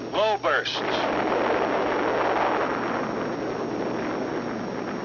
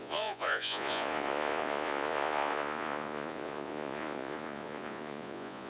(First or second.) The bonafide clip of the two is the first